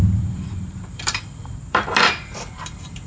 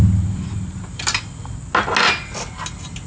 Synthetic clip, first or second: first